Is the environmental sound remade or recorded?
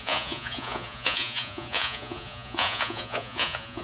remade